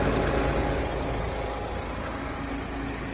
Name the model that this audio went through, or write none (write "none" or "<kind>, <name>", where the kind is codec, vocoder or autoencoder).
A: none